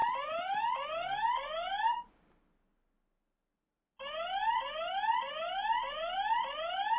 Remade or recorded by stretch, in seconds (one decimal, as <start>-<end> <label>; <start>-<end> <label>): 0.0-7.0 recorded